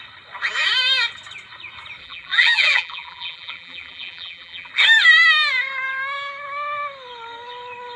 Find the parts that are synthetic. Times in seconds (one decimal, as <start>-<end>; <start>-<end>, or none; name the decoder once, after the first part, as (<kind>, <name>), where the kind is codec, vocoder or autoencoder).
2.0-4.7 (vocoder, BigVGAN v2)